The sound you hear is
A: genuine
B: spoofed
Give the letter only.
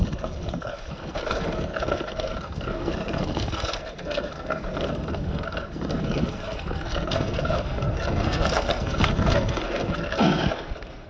B